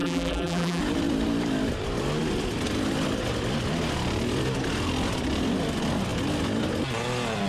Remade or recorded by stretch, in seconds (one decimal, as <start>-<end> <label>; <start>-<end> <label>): 0.0-0.8 remade; 0.8-7.5 recorded